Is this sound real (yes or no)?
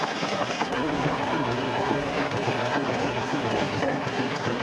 no